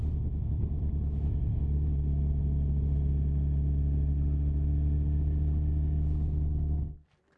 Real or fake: real